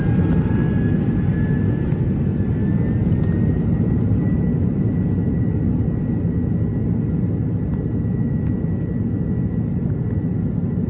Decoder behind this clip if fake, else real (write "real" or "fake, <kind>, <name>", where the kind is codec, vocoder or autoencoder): real